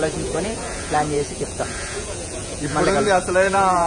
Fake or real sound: fake